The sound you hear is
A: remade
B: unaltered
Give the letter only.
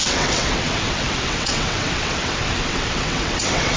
A